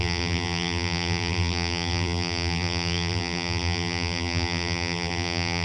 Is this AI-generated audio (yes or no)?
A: yes